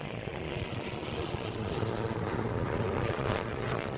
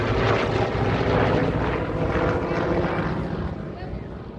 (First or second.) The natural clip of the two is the second